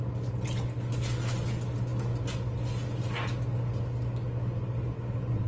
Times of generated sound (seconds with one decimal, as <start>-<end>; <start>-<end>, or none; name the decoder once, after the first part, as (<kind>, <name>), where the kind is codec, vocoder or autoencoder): none

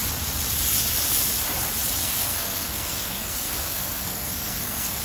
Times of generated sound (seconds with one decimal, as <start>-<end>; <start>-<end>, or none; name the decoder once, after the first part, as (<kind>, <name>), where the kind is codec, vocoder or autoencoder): 2.0-5.0 (codec, SNAC)

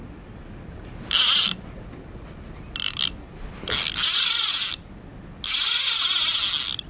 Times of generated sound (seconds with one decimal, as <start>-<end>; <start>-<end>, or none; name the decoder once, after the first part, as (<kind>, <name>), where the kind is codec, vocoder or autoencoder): none

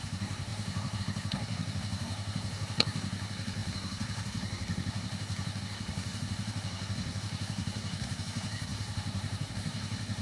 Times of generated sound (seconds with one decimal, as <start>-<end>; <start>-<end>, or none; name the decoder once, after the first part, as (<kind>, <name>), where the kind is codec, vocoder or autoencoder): 0.0-10.2 (codec, SNAC)

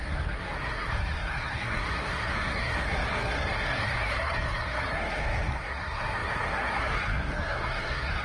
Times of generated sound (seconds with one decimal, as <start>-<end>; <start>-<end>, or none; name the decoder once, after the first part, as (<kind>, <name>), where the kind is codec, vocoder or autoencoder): 0.0-8.2 (codec, SNAC)

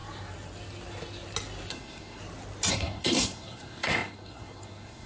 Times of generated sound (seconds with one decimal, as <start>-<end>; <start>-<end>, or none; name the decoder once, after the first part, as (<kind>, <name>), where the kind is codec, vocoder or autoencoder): 1.7-2.2 (codec, SNAC); 2.7-5.1

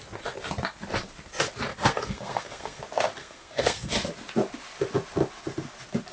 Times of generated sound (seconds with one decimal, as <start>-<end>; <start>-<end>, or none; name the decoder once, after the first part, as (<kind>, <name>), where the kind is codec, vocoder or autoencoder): 1.7-2.8 (codec, SNAC); 3.2-3.9

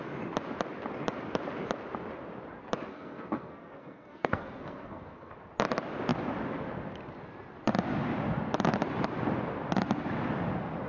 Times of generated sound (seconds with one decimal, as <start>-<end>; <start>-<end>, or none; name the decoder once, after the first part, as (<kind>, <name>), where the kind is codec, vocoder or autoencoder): 2.9-5.3 (codec, SNAC)